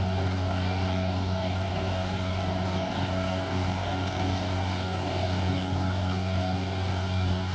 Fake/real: fake